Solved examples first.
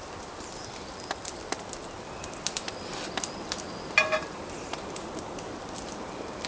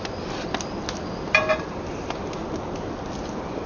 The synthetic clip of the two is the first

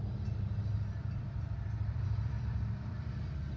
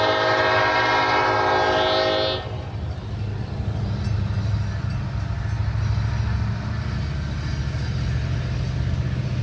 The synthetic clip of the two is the first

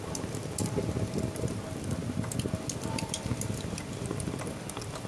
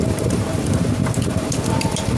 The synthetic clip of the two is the second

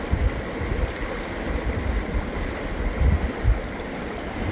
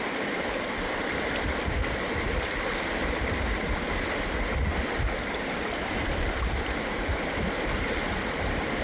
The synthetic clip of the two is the second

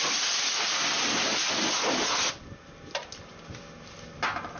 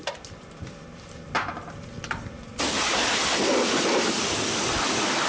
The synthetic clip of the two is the second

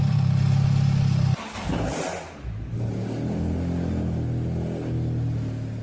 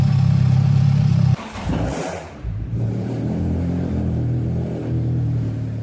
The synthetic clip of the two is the second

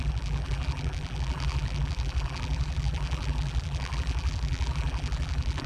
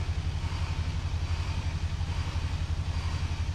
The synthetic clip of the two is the first